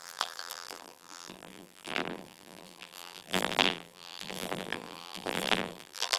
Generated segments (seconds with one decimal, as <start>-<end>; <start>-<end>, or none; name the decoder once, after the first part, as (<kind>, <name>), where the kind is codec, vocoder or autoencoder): 0.0-6.2 (vocoder, BigVGAN v2)